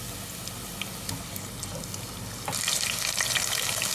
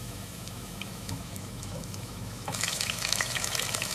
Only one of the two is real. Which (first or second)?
first